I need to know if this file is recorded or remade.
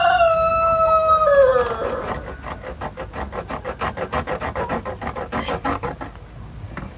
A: recorded